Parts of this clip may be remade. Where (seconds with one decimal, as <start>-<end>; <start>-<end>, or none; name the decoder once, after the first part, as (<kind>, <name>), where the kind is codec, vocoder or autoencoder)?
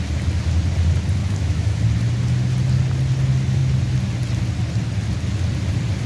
1.2-1.8 (autoencoder, DAC-VAE)